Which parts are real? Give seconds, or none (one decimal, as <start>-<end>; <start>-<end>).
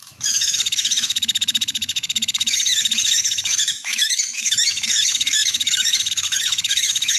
none